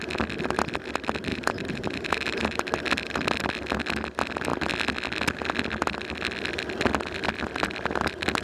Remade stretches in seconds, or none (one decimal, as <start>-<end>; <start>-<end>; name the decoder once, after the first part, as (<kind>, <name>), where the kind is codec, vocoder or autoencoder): 1.3-2.6 (vocoder, BigVGAN v2)